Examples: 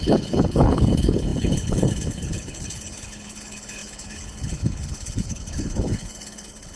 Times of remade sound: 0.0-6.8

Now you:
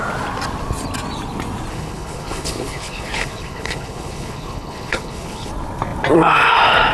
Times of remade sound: 1.7-5.5

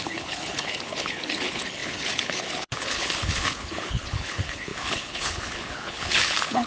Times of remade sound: 0.0-6.7

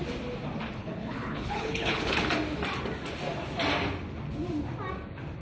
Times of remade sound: 0.8-2.2